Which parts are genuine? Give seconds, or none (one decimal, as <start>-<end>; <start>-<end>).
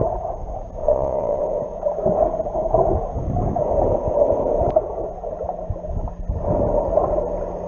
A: 0.0-0.8; 1.4-7.7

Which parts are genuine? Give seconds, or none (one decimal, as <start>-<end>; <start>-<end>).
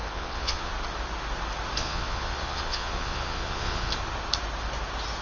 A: 0.7-1.8; 3.9-5.2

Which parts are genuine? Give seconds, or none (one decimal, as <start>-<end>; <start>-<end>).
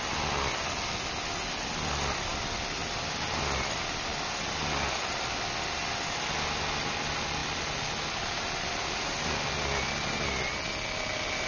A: 0.0-11.5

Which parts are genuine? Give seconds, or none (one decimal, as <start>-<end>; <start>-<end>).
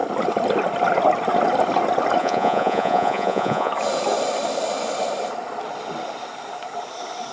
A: 0.0-2.2; 3.7-7.3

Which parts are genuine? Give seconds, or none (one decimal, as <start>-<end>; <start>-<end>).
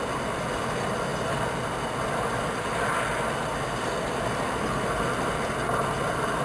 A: 0.0-6.4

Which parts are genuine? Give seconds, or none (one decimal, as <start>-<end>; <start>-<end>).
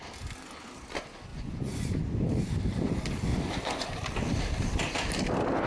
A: 0.0-1.3; 2.0-3.3; 4.0-5.7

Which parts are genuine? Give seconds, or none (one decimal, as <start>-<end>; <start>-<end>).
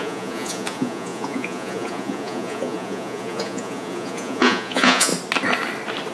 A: 5.1-6.1